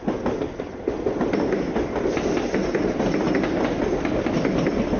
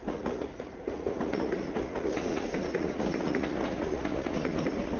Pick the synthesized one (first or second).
second